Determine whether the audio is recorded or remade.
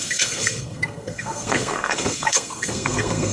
remade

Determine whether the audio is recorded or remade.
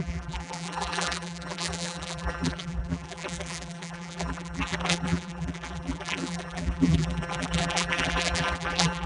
remade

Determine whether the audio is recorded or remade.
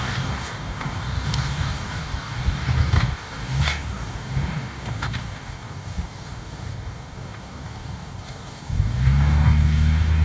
remade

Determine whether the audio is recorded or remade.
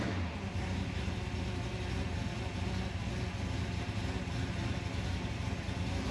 recorded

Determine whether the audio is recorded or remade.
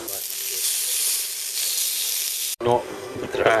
recorded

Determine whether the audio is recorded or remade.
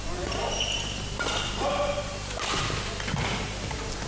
recorded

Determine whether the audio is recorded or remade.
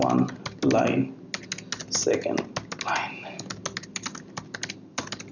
recorded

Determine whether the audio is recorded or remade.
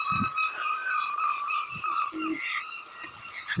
recorded